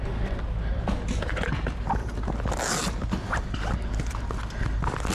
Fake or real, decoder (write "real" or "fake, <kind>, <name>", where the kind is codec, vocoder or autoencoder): real